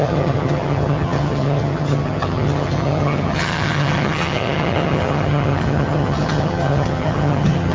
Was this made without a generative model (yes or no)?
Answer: no